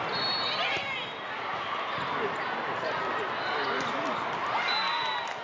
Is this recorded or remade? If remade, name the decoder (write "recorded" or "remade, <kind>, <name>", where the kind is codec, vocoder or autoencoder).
recorded